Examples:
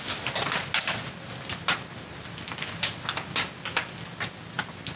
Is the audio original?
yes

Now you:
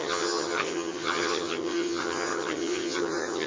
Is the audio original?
no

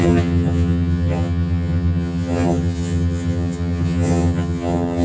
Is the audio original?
no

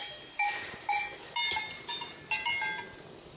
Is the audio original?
yes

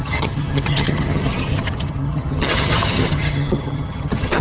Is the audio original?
no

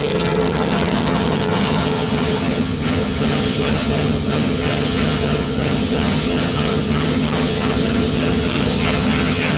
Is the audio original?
no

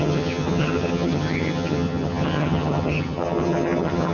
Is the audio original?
no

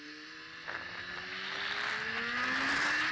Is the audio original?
yes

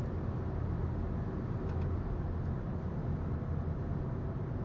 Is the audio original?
yes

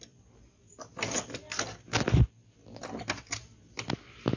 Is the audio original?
yes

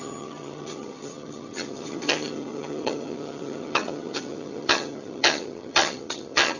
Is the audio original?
no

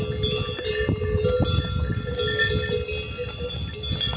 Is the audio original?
yes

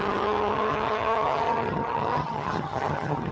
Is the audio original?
no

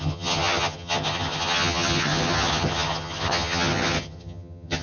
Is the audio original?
no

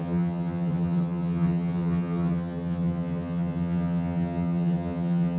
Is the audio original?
no